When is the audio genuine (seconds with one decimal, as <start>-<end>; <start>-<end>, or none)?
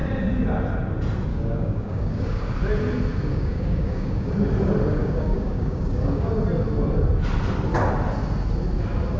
0.0-1.3; 2.4-3.3; 4.3-5.0; 6.3-9.2